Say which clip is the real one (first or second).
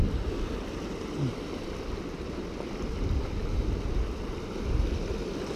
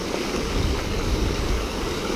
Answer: first